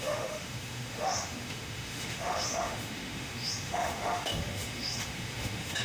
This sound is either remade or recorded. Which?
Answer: remade